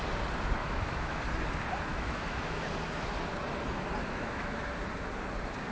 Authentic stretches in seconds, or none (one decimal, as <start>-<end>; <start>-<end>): 0.0-0.6; 1.2-1.9; 2.6-4.0; 4.7-5.7